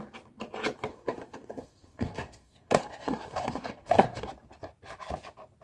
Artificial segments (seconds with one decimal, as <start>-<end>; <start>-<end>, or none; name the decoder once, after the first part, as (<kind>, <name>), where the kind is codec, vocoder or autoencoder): 0.9-4.3 (codec, SNAC)